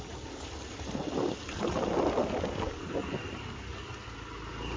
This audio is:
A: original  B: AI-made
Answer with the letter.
A